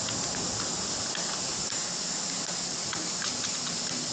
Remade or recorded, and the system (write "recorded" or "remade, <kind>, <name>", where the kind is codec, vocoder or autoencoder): recorded